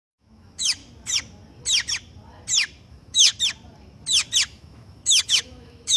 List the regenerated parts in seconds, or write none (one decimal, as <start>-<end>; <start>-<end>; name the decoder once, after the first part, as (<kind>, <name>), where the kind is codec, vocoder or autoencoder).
0.0-0.8 (autoencoder, DAC-VAE); 2.9-3.3; 4.5-6.0